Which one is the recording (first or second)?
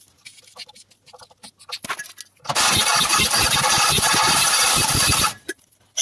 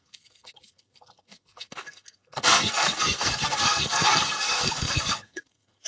first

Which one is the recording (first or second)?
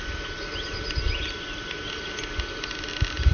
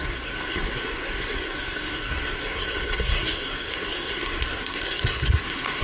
first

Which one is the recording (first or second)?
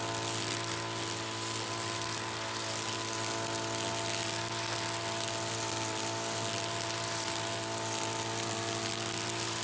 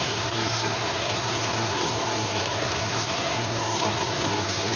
first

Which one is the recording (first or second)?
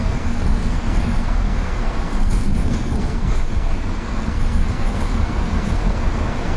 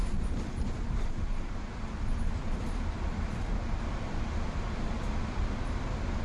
second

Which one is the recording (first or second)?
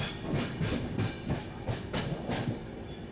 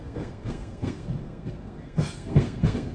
first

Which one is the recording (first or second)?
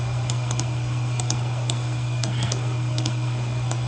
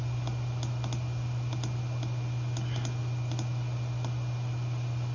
second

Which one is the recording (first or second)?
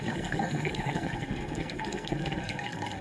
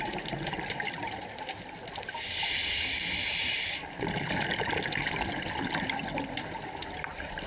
second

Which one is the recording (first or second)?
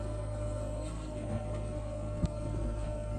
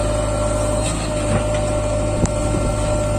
second